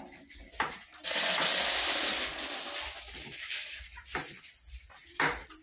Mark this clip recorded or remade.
recorded